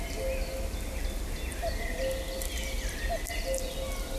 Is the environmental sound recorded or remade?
recorded